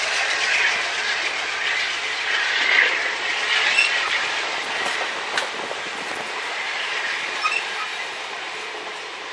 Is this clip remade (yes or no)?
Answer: no